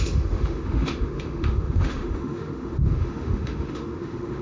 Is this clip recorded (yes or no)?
no